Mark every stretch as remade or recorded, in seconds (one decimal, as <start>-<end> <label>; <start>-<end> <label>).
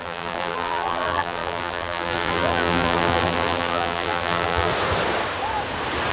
0.0-4.7 remade; 4.7-6.1 recorded